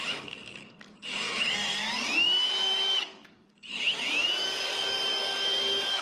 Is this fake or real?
fake